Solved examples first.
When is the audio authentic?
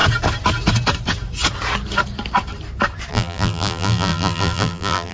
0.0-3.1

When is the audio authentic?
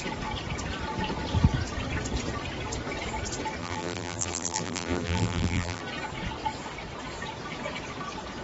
0.0-3.6; 5.8-8.4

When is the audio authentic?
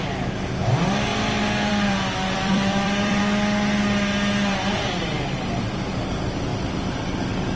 0.0-2.2; 3.2-7.6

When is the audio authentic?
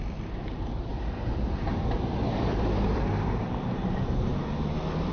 0.0-0.9; 3.1-5.1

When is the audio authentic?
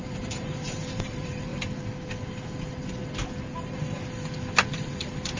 1.5-4.7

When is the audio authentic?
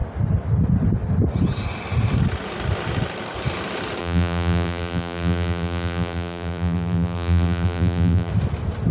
0.0-4.0; 8.3-8.9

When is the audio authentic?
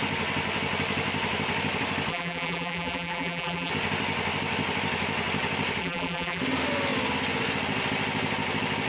0.0-2.1; 3.7-5.8; 6.4-8.9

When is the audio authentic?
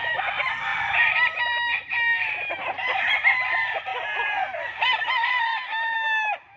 0.0-0.7; 1.4-6.6